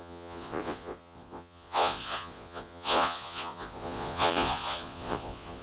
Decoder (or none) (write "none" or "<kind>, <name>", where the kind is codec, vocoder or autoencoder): vocoder, Vocos